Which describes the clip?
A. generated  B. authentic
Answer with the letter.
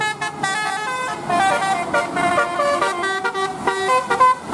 B